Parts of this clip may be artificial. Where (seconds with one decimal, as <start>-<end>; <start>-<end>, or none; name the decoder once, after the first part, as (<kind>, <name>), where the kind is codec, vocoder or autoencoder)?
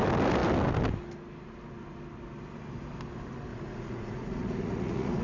3.5-5.2 (vocoder, Vocos)